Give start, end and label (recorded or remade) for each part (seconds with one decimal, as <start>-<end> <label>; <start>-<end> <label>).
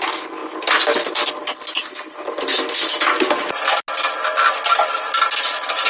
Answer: 0.0-0.4 recorded; 0.4-1.3 remade; 1.3-5.9 recorded